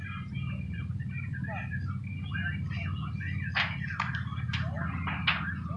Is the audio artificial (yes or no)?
no